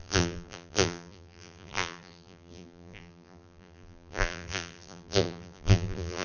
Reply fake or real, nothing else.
fake